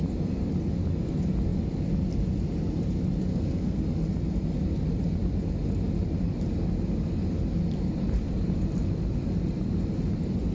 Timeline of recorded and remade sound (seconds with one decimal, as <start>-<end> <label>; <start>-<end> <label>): 0.0-3.3 recorded; 3.3-3.8 remade; 3.8-10.5 recorded